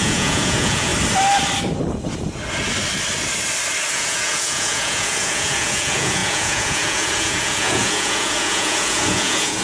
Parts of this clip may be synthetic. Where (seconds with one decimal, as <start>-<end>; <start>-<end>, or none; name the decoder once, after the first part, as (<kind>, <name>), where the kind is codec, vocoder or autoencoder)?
0.0-0.9 (vocoder, Vocos); 3.9-9.6